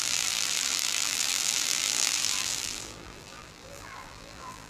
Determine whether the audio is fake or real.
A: fake